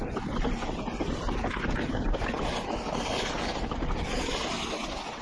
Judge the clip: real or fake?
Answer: real